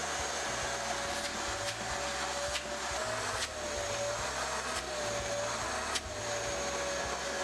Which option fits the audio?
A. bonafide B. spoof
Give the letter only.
A